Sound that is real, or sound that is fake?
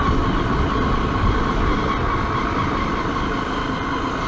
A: real